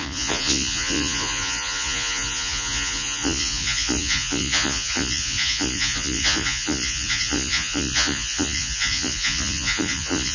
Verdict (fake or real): fake